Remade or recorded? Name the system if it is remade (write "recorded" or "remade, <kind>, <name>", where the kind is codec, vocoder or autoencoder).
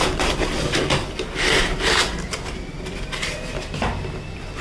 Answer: recorded